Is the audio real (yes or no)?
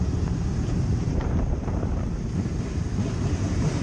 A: no